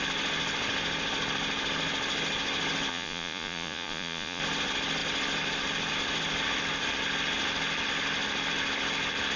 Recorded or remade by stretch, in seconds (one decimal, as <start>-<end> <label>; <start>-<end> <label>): 0.0-2.9 recorded; 2.9-4.4 remade; 4.4-9.4 recorded